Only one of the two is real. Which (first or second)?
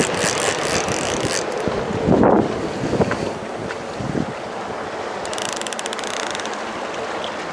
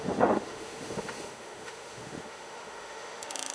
first